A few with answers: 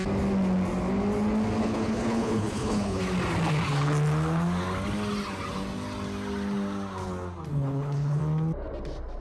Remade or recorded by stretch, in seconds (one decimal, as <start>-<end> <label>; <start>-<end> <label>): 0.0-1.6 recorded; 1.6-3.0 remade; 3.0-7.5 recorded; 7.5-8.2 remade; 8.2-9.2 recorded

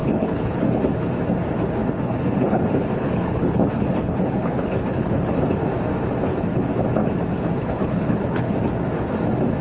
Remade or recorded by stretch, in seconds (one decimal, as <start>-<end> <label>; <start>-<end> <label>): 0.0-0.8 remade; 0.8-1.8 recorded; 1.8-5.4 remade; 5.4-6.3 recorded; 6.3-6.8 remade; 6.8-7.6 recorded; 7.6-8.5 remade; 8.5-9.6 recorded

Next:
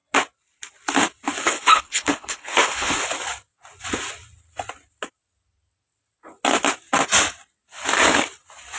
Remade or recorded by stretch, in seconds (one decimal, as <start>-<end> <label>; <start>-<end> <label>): 0.0-1.4 recorded; 1.4-3.0 remade; 3.0-8.8 recorded

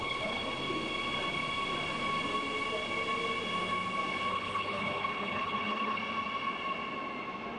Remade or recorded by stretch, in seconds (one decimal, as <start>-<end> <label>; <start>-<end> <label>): 0.0-0.4 remade; 0.4-4.3 recorded; 4.3-6.0 remade; 6.0-7.6 recorded